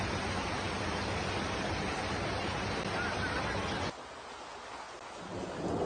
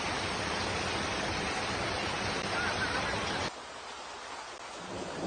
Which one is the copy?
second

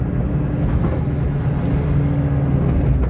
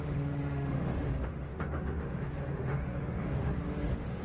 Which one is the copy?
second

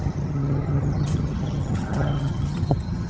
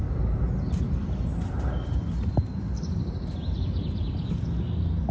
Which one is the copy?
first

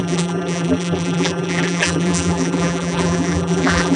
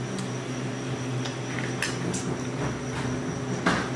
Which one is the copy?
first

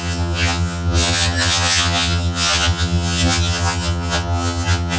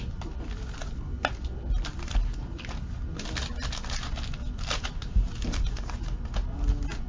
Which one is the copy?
first